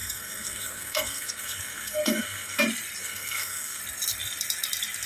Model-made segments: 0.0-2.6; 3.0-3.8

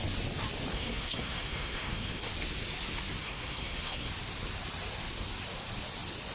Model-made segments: 0.7-2.3; 3.2-4.1

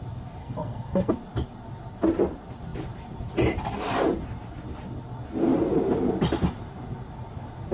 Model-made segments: 0.4-1.1

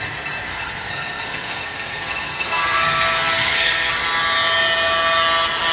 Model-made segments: 0.5-3.9

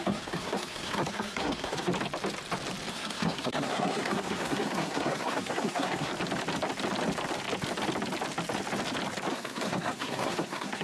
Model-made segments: 0.0-1.9; 2.9-6.1; 9.3-10.8

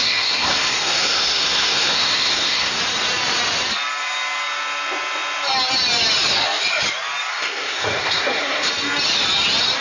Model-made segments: 0.0-2.8; 7.3-8.7